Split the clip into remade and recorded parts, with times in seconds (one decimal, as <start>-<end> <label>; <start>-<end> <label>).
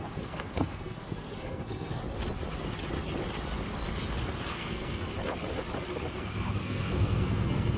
0.0-2.0 remade; 2.0-4.5 recorded; 4.5-5.1 remade; 5.1-6.1 recorded; 6.1-7.8 remade